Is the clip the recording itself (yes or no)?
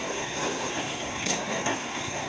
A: no